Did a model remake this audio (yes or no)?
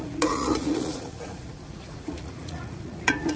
yes